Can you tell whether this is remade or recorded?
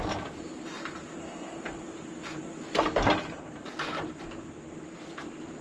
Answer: recorded